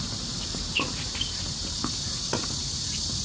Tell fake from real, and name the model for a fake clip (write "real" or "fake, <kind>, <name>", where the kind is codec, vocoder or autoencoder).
real